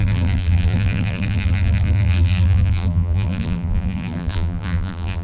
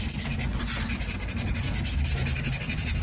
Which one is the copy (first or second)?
first